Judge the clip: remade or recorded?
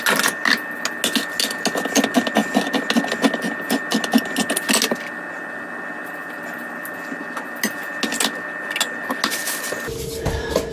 recorded